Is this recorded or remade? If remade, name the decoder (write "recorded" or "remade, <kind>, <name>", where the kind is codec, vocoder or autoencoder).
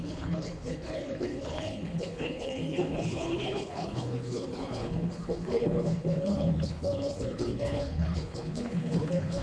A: remade, codec, HILCodec